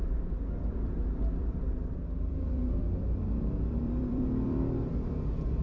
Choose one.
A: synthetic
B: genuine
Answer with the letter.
A